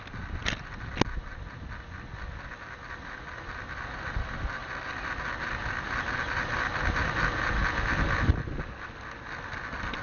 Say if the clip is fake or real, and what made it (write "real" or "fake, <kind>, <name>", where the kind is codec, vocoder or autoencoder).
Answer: real